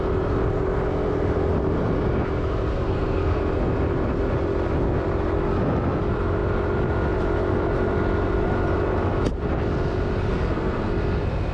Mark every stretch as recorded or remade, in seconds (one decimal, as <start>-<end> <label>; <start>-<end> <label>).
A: 0.0-2.7 recorded; 2.7-3.4 remade; 3.4-10.3 recorded; 10.3-10.9 remade; 10.9-11.5 recorded